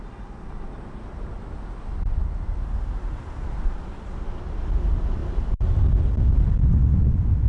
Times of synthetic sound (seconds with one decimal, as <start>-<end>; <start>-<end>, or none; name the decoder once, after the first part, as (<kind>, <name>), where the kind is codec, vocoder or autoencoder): none